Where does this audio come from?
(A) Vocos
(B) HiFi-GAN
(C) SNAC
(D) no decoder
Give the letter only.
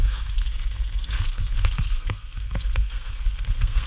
C